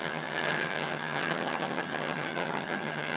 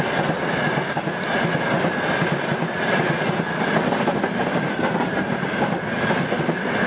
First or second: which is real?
second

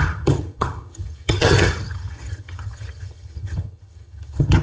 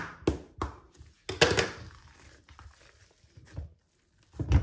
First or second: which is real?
second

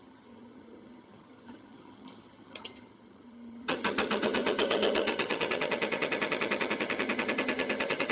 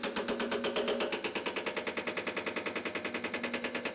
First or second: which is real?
second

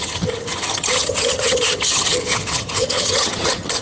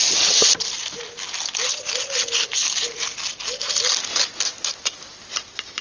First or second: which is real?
second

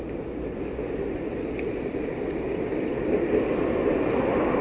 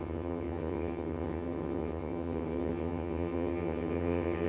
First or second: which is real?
first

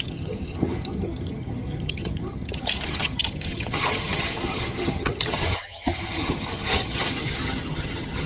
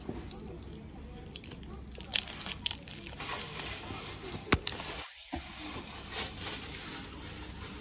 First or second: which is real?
second